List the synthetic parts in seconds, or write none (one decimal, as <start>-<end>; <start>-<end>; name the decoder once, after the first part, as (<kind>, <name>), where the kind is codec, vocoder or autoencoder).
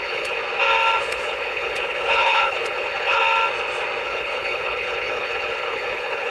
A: 0.0-0.4 (codec, HILCodec); 1.0-3.2; 4.0-6.3